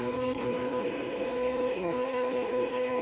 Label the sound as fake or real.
fake